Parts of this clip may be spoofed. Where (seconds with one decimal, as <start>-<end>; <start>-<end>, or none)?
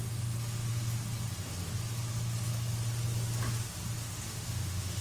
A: 4.0-5.0